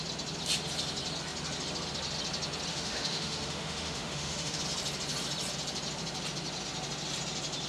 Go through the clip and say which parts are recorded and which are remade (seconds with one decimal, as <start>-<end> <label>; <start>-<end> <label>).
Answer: 0.0-2.7 recorded; 2.7-4.6 remade; 4.6-7.7 recorded